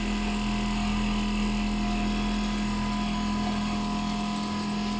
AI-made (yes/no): no